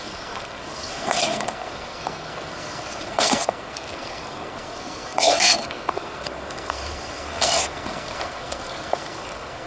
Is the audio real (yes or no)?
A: no